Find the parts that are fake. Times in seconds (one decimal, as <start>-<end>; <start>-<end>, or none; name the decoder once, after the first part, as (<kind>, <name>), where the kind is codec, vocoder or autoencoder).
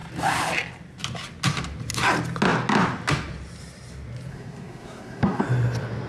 4.3-5.4 (codec, SNAC)